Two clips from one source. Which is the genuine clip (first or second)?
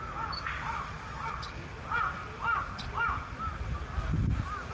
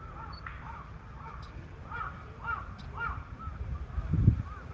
first